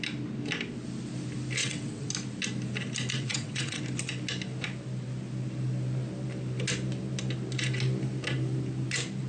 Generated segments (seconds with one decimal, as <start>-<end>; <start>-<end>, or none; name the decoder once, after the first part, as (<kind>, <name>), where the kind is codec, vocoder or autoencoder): 1.6-2.1 (vocoder, WaveNeXt); 3.1-3.8